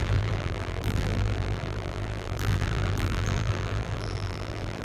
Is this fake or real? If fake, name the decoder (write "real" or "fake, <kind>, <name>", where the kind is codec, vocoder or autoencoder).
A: fake, vocoder, BigVGAN v2